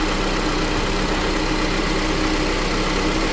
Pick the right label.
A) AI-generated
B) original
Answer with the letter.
B